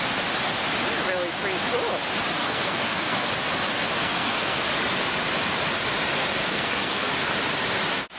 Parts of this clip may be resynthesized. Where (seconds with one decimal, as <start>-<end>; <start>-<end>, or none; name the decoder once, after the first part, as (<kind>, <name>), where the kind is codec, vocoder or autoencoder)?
2.4-3.3 (codec, SNAC); 4.0-4.6; 6.4-7.1